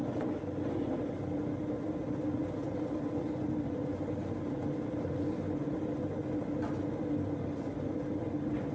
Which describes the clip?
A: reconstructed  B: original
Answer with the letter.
B